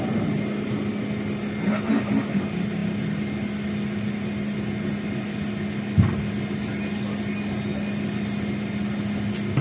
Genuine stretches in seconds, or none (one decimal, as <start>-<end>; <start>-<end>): 0.0-9.6